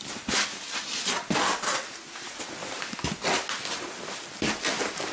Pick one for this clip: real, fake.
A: real